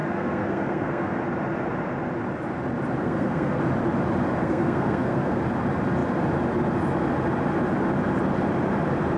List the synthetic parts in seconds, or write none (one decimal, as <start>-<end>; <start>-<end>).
0.0-1.2; 3.0-3.6; 4.4-5.4